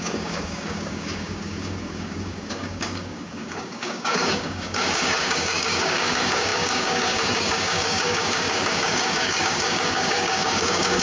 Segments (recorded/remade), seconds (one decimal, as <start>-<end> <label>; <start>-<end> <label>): 0.0-11.0 remade